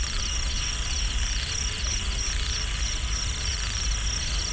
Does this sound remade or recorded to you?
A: recorded